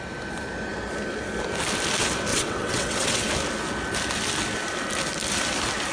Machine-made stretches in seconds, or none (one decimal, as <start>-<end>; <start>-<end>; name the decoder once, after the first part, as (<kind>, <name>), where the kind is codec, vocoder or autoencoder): 2.3-3.3 (vocoder, WaveNeXt)